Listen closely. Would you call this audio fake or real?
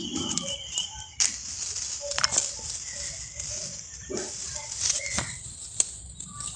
real